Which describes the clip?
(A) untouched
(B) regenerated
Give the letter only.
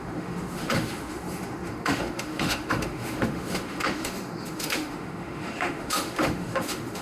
B